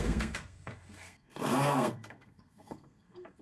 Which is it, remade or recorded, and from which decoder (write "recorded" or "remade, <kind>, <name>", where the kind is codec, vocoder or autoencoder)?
remade, codec, SNAC